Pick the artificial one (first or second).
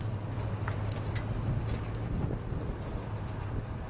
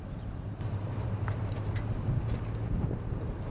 second